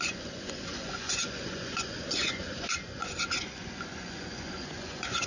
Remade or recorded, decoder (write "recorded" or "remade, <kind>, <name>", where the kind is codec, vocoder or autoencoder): remade, vocoder, Vocos